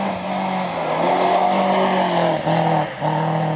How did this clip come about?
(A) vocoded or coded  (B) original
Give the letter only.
B